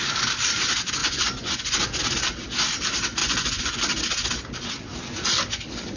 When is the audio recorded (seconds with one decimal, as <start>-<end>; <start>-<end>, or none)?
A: 0.0-1.0; 2.0-3.2; 3.8-6.0